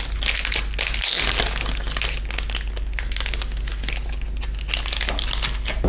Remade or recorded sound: recorded